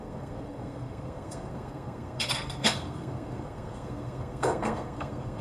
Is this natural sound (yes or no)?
no